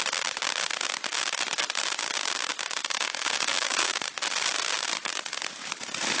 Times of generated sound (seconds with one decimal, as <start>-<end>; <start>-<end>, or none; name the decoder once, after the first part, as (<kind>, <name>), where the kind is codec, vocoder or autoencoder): 2.8-4.0 (codec, DAC)